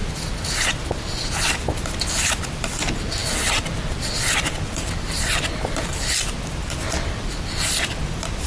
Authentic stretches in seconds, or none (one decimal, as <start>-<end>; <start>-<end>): 0.0-2.5